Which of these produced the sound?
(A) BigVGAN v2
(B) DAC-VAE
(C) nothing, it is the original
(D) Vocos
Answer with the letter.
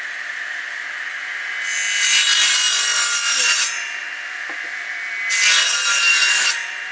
C